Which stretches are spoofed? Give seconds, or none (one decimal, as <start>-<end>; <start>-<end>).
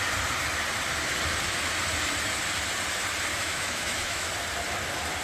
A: 3.4-4.3